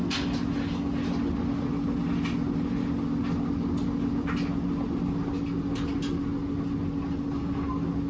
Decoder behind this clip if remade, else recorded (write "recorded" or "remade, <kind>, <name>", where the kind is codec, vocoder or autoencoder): recorded